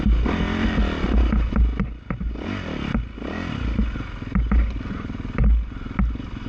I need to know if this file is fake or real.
real